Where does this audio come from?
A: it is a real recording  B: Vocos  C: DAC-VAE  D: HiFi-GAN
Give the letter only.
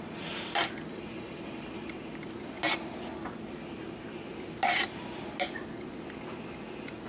A